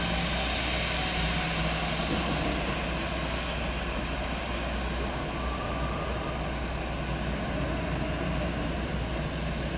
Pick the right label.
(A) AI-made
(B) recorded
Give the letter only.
B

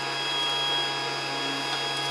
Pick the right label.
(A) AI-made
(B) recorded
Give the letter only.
B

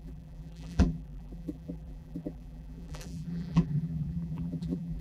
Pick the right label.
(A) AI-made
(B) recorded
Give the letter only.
A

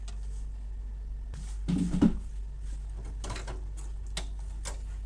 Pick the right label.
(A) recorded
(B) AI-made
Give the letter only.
A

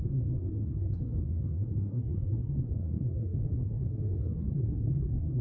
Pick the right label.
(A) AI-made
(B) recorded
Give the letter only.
A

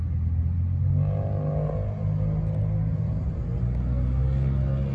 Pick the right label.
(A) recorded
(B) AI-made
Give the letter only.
A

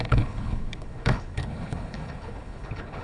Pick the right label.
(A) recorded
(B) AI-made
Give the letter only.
B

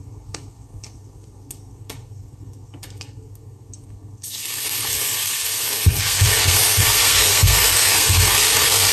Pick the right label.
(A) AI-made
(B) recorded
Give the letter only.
A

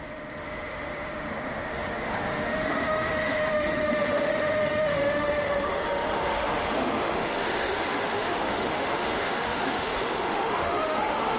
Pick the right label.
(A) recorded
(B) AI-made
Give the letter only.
B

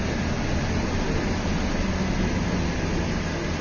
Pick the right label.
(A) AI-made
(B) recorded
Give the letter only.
B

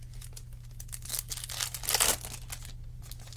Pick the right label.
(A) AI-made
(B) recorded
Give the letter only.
B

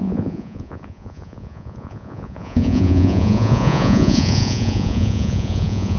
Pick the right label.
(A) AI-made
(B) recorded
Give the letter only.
A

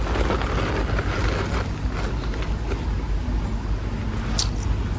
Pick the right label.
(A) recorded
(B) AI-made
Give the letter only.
A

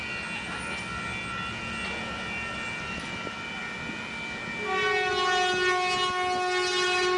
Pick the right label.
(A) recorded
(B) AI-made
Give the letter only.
A